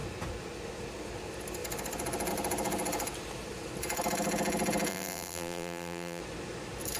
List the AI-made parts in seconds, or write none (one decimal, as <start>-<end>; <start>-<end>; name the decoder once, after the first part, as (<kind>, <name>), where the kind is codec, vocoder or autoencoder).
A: 4.9-6.2 (vocoder, BigVGAN v2)